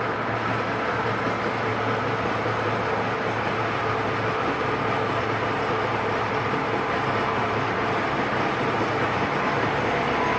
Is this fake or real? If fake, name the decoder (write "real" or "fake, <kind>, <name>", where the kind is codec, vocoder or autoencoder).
real